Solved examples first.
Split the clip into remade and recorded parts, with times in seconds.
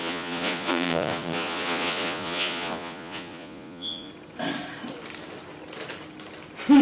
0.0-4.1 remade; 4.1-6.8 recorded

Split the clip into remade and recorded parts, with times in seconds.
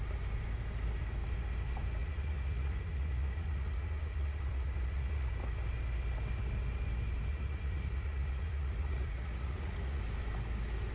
0.0-2.0 recorded; 2.0-5.3 remade; 5.3-7.3 recorded; 7.3-10.0 remade; 10.0-10.9 recorded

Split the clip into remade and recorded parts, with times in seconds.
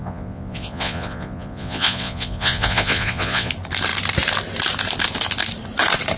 0.0-3.5 remade; 3.5-6.2 recorded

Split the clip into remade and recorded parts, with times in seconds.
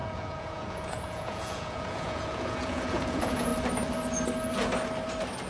0.0-3.5 remade; 3.5-5.5 recorded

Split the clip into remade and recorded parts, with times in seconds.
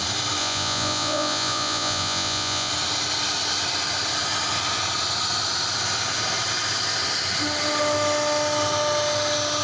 0.0-0.4 recorded; 0.4-2.7 remade; 2.7-9.6 recorded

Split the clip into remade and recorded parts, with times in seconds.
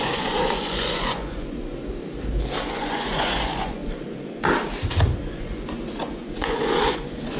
0.0-1.7 remade; 1.7-2.7 recorded; 2.7-3.8 remade; 3.8-5.3 recorded; 5.3-7.4 remade